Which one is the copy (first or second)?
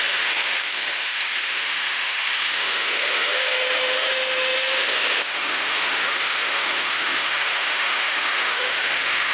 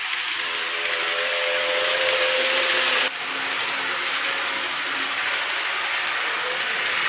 first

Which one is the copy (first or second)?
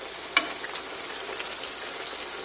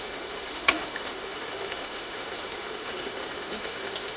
second